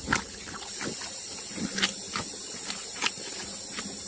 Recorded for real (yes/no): yes